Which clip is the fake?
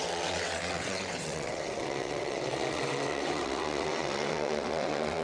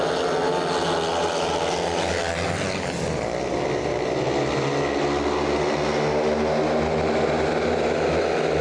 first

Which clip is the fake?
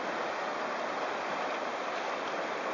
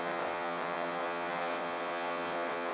second